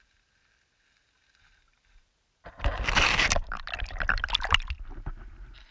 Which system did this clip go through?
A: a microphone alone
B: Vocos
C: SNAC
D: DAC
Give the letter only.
A